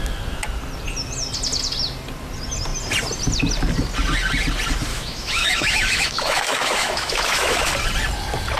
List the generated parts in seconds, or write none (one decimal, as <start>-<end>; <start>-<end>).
4.9-7.7